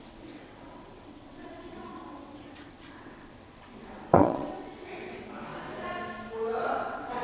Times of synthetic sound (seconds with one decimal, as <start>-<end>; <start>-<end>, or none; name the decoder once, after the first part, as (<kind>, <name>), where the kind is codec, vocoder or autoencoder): 0.0-5.5 (vocoder, WaveNeXt); 6.8-7.2